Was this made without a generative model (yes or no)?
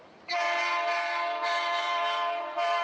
no